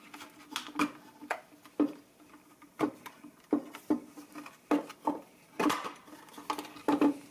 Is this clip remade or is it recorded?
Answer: recorded